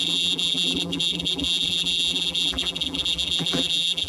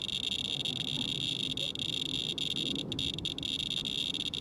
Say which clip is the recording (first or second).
second